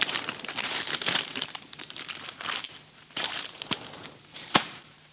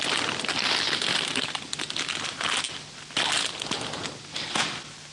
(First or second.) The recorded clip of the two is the second